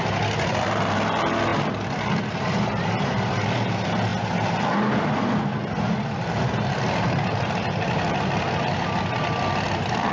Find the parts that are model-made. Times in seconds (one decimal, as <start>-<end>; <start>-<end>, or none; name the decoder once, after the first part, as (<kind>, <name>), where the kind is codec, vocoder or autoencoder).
none